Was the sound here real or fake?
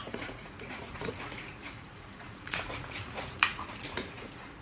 fake